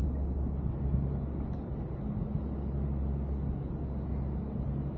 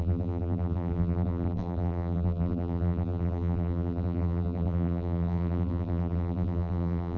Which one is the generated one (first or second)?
second